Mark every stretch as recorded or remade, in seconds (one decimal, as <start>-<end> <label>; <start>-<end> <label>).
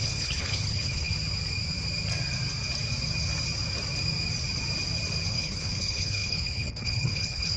0.0-1.1 remade; 1.1-5.3 recorded; 5.3-7.6 remade